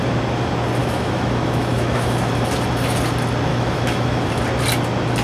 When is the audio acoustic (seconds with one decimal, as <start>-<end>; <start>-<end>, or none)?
0.0-0.8; 2.3-3.5; 4.3-5.2